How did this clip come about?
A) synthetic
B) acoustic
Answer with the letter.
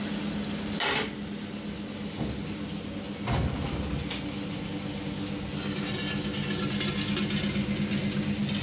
B